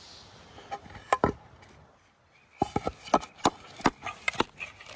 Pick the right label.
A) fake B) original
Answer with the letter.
B